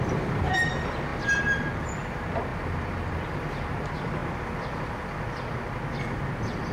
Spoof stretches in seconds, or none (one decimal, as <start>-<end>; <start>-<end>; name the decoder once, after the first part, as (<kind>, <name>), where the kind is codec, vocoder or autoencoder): 0.0-1.1 (vocoder, BigVGAN v2); 1.7-4.2; 5.9-6.7